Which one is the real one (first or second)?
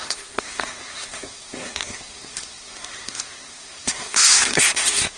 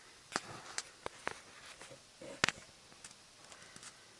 second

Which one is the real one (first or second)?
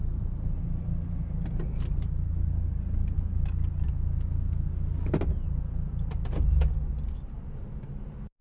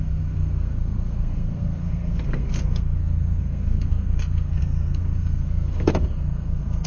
first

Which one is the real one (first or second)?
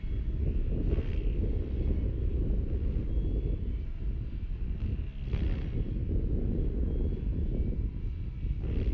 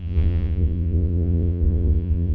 first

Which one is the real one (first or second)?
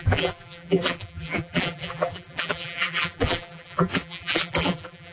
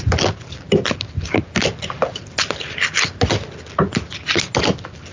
second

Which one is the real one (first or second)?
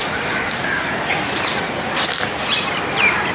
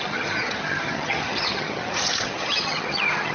first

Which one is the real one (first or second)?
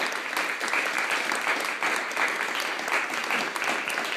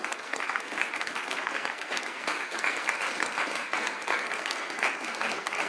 first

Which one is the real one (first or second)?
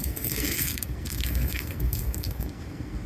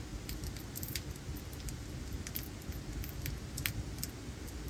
second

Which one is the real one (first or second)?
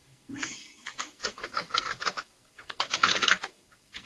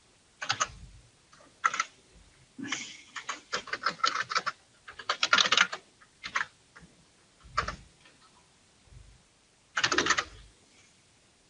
second